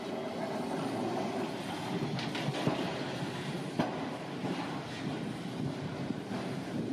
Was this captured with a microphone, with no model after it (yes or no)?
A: yes